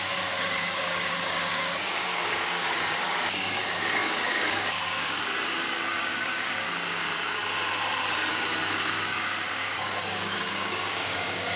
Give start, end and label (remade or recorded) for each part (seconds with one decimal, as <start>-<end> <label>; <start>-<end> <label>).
0.0-7.4 remade; 7.4-8.3 recorded; 8.3-11.6 remade